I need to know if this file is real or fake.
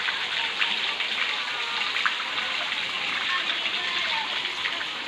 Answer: real